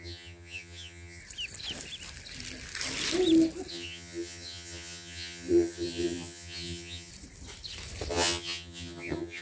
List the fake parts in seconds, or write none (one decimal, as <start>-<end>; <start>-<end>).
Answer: 0.0-1.2; 3.7-7.1; 8.1-9.4